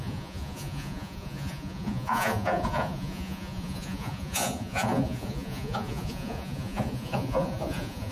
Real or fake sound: fake